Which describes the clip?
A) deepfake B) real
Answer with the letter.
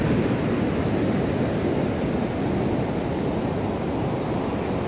B